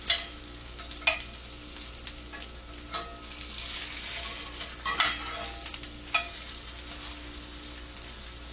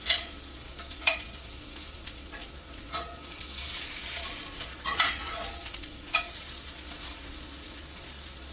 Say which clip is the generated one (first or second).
second